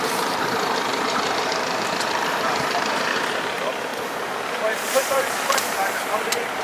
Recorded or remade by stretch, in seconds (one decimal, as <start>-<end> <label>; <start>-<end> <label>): 0.0-6.6 remade